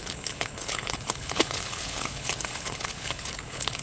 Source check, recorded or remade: remade